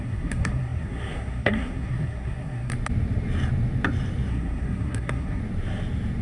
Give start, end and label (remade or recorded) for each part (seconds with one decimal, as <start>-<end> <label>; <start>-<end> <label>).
0.0-2.7 remade; 2.7-4.3 recorded; 4.3-5.4 remade; 5.4-6.2 recorded